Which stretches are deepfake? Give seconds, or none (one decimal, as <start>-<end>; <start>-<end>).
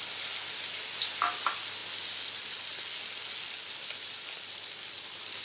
none